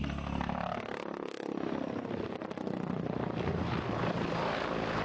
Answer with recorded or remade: recorded